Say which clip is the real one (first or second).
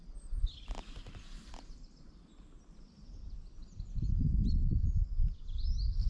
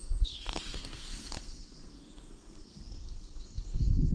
first